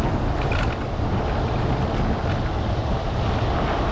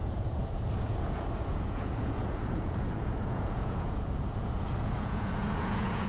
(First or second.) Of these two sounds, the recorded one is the first